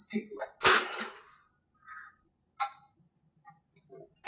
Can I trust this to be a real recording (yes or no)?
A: yes